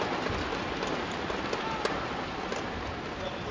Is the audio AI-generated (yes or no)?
no